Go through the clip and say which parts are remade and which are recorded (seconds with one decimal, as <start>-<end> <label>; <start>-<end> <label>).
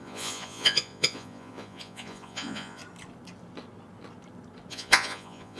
0.0-2.8 remade; 2.8-4.7 recorded; 4.7-5.6 remade